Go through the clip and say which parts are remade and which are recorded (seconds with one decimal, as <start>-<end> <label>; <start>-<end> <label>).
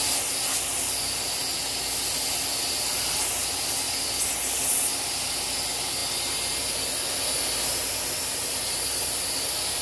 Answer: 0.0-9.8 recorded